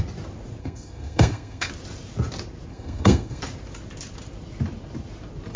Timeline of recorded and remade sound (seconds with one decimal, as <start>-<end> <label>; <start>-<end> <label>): 0.0-0.6 recorded; 0.6-1.7 remade; 1.7-2.7 recorded; 2.7-3.4 remade; 3.4-5.6 recorded